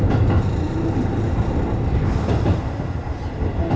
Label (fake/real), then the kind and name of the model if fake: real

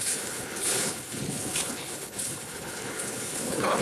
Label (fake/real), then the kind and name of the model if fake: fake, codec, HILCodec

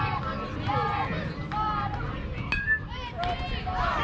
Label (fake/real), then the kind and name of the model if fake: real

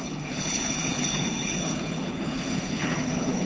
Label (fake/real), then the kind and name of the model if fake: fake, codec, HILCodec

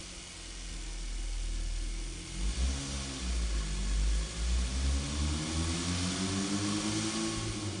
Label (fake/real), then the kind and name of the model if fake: real